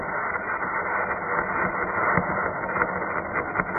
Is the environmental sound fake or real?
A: real